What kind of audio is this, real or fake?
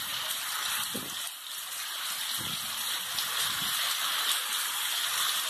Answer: real